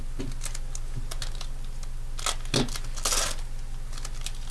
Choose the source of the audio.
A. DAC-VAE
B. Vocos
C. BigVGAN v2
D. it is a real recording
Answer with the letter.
D